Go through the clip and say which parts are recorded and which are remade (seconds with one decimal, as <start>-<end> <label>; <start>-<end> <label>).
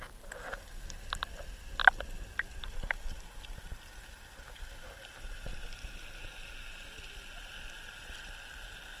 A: 0.0-9.0 recorded